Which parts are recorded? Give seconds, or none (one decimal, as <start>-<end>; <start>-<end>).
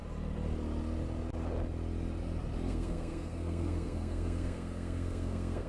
0.0-2.7